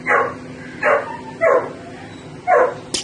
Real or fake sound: real